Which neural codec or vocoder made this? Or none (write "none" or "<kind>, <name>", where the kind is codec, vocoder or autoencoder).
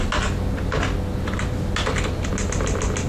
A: none